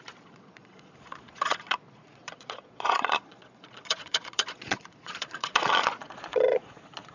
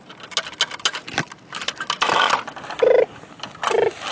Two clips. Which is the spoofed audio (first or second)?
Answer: first